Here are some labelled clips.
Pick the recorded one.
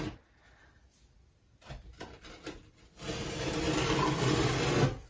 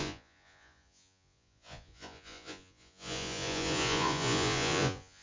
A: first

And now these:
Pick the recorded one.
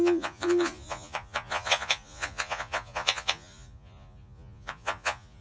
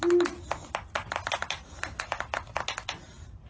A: second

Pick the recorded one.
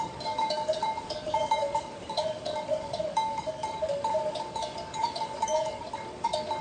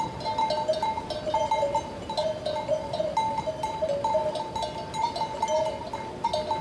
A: second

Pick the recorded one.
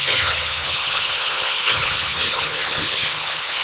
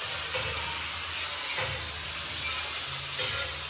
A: second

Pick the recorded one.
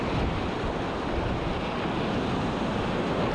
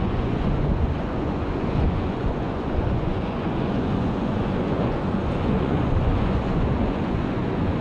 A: first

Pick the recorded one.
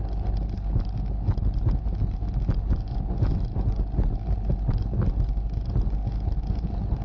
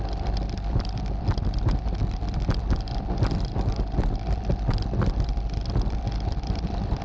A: first